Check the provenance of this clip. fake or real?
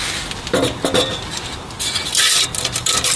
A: real